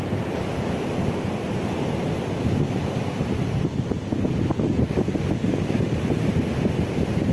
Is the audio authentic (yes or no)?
yes